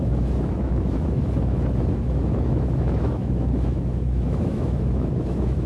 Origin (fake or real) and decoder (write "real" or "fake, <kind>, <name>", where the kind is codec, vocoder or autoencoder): fake, autoencoder, DAC-VAE